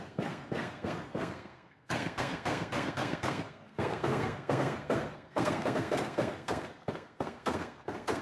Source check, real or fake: fake